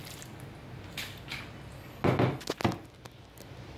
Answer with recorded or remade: recorded